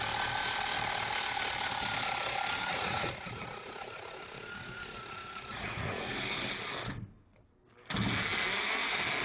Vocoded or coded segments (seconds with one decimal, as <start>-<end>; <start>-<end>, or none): 2.7-6.1